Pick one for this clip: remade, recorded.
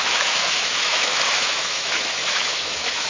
remade